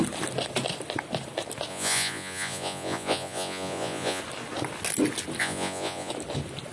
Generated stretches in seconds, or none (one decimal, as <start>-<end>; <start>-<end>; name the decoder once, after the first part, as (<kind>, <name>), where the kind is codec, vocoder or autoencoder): 1.7-4.2 (vocoder, Vocos); 5.4-6.1